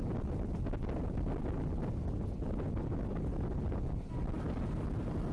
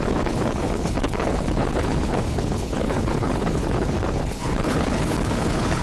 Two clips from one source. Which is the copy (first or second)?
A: second